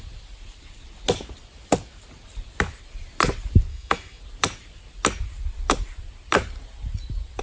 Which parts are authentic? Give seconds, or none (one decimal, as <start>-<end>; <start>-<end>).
0.0-3.7; 4.2-7.4